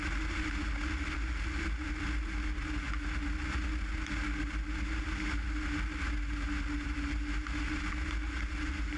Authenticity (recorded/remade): recorded